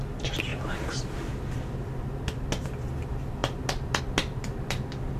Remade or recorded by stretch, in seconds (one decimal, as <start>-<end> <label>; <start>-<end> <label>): 0.0-5.2 recorded